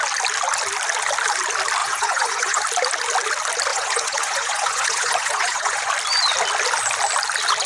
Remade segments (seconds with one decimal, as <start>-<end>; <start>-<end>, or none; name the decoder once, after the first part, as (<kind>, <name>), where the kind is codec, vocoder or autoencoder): 1.8-2.6 (vocoder, Vocos); 3.7-5.9

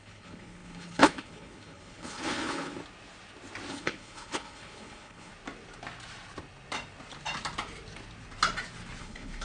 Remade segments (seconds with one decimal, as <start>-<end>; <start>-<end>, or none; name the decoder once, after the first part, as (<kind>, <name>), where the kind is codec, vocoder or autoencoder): 0.0-2.8 (codec, HILCodec); 3.7-5.3; 9.0-9.4

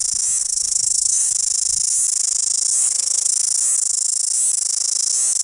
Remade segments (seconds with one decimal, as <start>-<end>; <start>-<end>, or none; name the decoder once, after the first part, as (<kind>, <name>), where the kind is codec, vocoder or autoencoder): 0.4-1.3 (codec, SNAC); 2.8-3.3

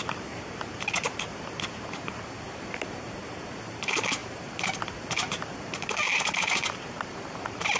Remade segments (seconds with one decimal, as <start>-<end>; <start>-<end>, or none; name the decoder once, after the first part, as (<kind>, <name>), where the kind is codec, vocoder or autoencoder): 0.0-7.8 (vocoder, BigVGAN v2)

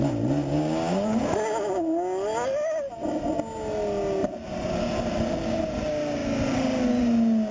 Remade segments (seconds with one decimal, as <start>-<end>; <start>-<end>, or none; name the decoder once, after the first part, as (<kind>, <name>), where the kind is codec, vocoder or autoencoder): none

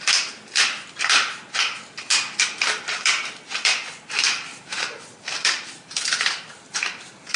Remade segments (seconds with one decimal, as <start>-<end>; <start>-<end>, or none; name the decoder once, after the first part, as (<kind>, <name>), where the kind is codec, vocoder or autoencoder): 4.5-7.4 (vocoder, BigVGAN v2)

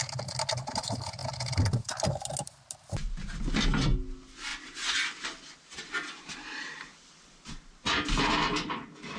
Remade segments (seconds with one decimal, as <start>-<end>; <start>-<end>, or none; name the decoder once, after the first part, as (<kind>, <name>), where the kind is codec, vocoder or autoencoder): none